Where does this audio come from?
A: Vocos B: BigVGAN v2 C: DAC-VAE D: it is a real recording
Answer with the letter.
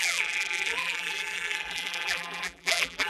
B